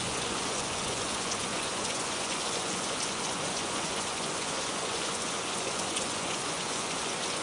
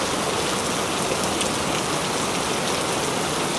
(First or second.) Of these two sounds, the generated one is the first